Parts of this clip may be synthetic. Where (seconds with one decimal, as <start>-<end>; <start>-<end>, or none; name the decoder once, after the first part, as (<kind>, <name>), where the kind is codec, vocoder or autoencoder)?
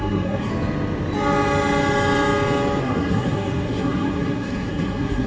0.0-0.5 (codec, SNAC); 2.8-5.3